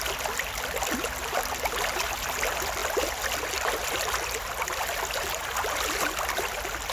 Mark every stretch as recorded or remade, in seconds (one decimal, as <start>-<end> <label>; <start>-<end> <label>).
0.0-6.9 recorded